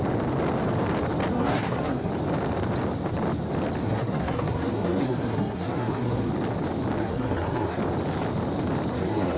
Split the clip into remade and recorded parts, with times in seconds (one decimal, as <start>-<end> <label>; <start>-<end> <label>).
0.0-1.3 recorded; 1.3-2.1 remade; 2.1-3.8 recorded; 3.8-6.3 remade; 6.3-7.0 recorded; 7.0-7.8 remade; 7.8-8.9 recorded; 8.9-9.4 remade